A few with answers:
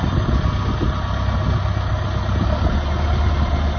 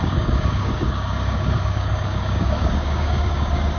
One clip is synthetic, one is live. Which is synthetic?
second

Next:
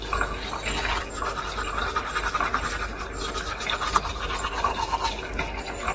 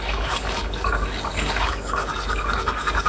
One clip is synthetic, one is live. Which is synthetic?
second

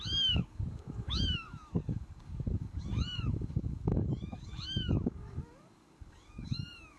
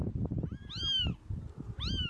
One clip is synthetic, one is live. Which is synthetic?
first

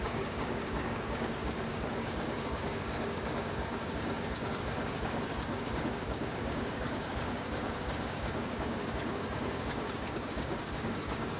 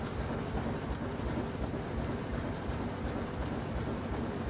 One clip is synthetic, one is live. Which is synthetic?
first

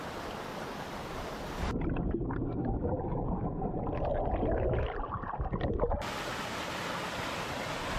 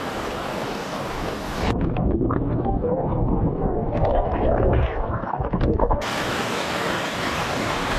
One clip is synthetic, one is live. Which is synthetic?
second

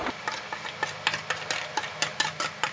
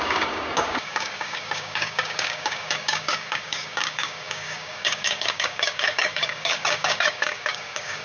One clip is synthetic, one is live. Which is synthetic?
second